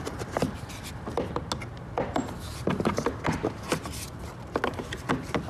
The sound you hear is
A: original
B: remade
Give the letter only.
A